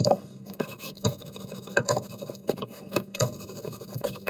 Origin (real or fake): fake